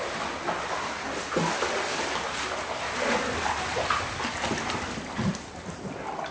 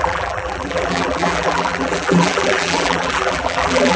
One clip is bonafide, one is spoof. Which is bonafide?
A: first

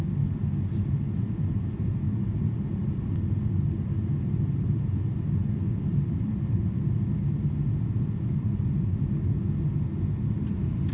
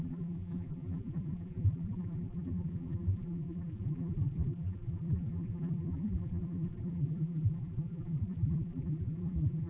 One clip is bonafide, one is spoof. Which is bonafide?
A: first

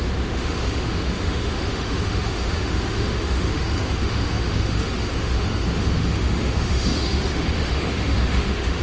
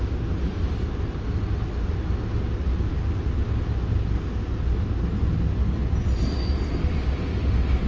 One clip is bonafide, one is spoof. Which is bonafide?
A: second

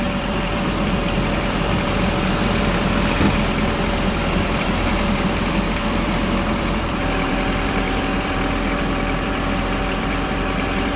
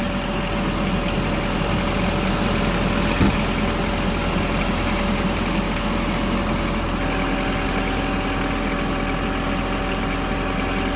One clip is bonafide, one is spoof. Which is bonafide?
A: second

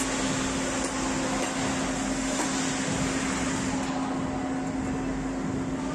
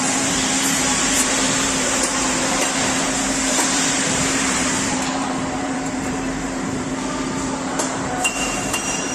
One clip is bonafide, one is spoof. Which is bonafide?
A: first